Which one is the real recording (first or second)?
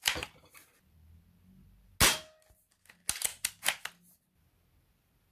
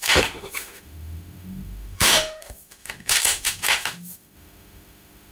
first